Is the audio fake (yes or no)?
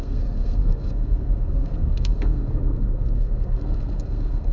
yes